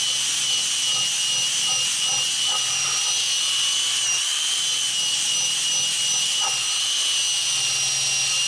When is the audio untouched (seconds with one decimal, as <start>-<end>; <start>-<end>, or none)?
0.0-8.5